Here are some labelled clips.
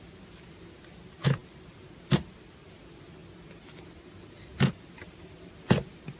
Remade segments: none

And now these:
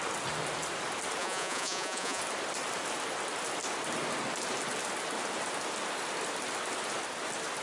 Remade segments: 1.2-2.2 (vocoder, Vocos)